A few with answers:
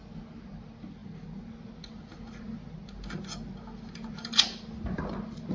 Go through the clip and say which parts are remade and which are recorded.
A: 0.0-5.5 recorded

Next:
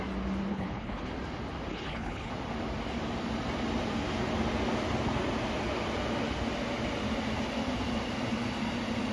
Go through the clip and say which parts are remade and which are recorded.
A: 0.0-0.5 recorded; 0.5-1.1 remade; 1.1-1.7 recorded; 1.7-2.3 remade; 2.3-9.1 recorded

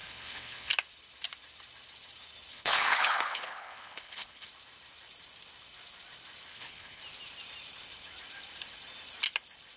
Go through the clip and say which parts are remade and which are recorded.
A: 0.0-0.7 remade; 0.7-2.5 recorded; 2.5-4.5 remade; 4.5-6.5 recorded; 6.5-7.0 remade; 7.0-9.8 recorded

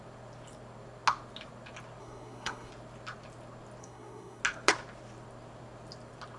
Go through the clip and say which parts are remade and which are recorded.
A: 0.0-2.0 recorded; 2.0-2.7 remade; 2.7-3.8 recorded; 3.8-4.4 remade; 4.4-6.4 recorded

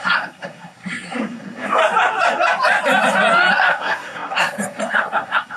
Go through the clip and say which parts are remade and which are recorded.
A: 0.0-1.8 remade; 1.8-3.5 recorded; 3.5-5.6 remade

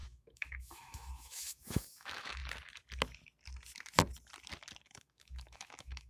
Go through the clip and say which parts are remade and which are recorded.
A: 0.0-2.4 remade; 2.4-4.8 recorded; 4.8-6.1 remade

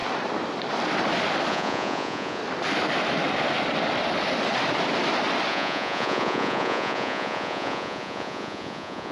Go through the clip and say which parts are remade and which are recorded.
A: 0.0-1.5 recorded; 1.5-2.4 remade; 2.4-5.5 recorded; 5.5-9.1 remade

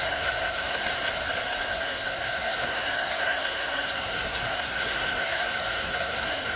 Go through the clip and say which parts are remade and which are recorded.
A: 0.0-0.9 remade; 0.9-1.7 recorded; 1.7-6.6 remade